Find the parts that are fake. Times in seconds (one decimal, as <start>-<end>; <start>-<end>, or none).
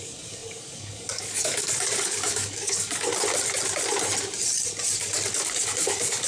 0.0-3.1; 5.0-6.3